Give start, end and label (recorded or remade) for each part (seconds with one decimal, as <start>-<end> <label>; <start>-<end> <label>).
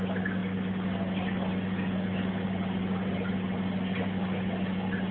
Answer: 0.0-5.1 recorded